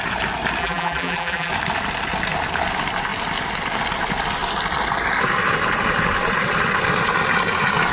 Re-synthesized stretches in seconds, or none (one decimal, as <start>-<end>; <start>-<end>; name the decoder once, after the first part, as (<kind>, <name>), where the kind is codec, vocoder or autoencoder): 0.6-1.5 (vocoder, BigVGAN v2)